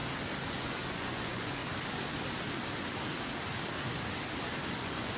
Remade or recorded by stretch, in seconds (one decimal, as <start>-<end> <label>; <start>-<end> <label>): 0.0-0.5 recorded; 0.5-1.6 remade; 1.6-4.7 recorded; 4.7-5.2 remade